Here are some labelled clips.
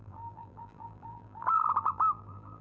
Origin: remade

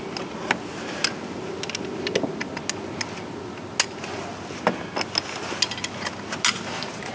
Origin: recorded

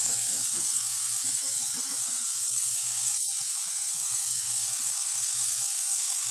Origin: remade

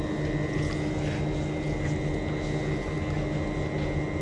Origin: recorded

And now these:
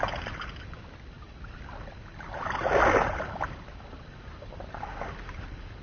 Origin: recorded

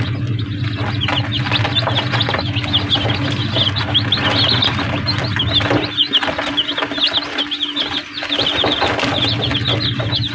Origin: recorded